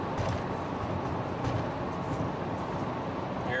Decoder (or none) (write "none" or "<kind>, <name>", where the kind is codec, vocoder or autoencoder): none